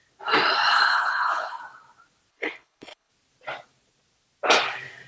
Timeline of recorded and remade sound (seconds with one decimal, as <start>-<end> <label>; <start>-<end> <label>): 0.0-0.9 recorded; 0.9-1.6 remade; 1.6-2.3 recorded; 2.3-3.1 remade; 3.1-5.1 recorded